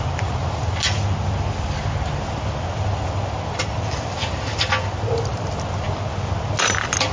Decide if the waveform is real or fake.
real